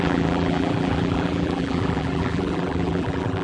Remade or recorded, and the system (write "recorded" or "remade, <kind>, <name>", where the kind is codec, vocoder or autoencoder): remade, vocoder, BigVGAN v2